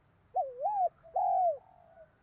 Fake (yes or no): no